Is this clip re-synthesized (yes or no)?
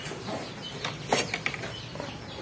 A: no